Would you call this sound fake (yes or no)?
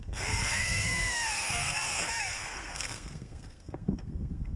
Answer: yes